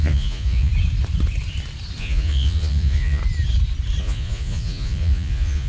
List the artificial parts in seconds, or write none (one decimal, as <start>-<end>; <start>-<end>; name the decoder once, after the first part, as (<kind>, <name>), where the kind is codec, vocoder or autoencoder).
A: 0.0-0.7 (vocoder, Vocos); 2.0-3.2; 4.0-5.7